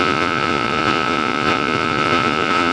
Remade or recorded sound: remade